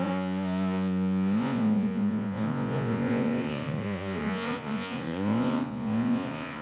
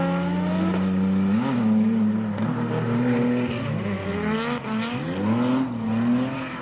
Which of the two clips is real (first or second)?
second